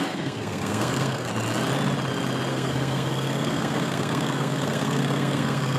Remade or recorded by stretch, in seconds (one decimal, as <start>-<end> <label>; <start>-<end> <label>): 0.0-1.3 remade; 1.3-2.5 recorded; 2.5-5.8 remade